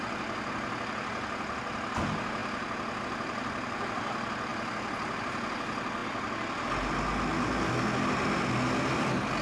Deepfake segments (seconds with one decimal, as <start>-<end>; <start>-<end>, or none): none